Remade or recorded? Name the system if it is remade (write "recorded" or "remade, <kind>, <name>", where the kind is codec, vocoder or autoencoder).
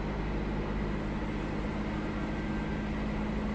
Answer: recorded